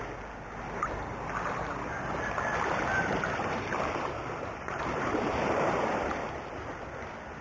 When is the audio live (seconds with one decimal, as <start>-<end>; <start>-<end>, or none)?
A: 0.0-2.9; 6.7-7.4